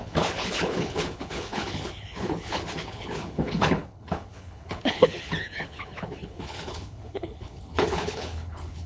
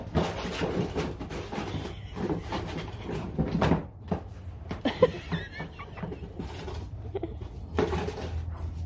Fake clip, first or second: first